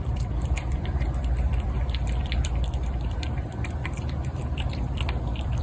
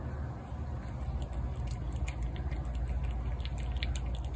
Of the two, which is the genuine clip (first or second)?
second